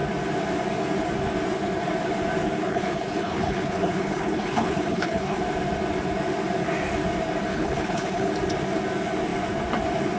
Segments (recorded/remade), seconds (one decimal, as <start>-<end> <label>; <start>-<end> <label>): 0.0-2.6 recorded; 2.6-5.4 remade; 5.4-7.5 recorded; 7.5-8.3 remade; 8.3-10.2 recorded